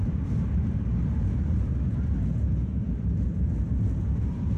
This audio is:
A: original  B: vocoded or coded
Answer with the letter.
B